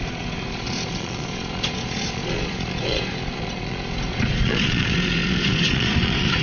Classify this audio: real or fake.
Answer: fake